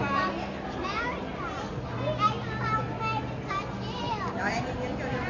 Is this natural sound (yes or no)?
yes